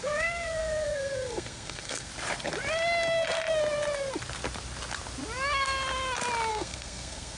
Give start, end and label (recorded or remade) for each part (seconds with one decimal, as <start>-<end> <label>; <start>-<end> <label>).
0.0-2.1 remade; 2.1-6.5 recorded; 6.5-7.4 remade